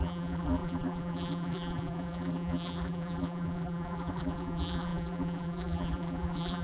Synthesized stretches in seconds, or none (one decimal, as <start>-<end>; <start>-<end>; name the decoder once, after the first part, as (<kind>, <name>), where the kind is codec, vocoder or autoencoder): 0.0-6.6 (vocoder, BigVGAN v2)